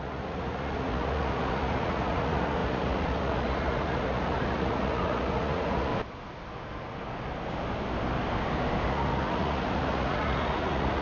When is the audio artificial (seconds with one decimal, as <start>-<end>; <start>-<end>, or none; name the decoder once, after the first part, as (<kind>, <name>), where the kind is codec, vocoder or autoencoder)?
0.0-5.9 (vocoder, Vocos); 8.9-11.0